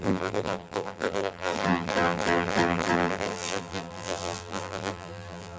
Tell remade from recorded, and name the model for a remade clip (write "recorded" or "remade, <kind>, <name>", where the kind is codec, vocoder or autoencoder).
remade, vocoder, BigVGAN v2